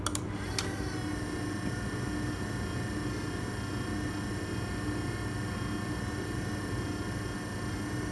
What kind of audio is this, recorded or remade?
recorded